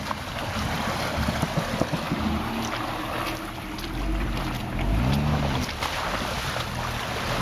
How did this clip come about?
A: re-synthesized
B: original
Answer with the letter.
B